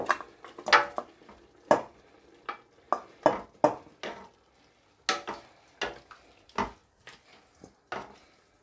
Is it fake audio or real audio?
real